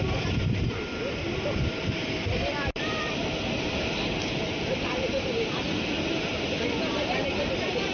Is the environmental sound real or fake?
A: fake